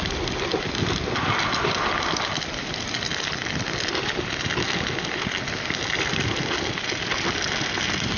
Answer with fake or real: real